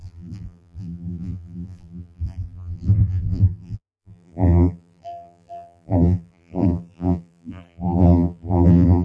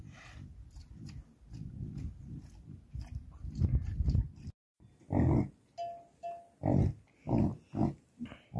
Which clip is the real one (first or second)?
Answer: second